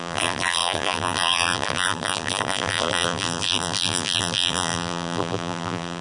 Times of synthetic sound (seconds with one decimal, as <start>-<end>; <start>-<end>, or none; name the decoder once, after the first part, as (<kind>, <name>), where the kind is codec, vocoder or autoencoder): 0.0-6.0 (vocoder, BigVGAN v2)